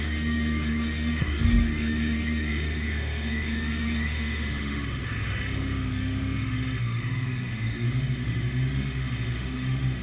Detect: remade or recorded remade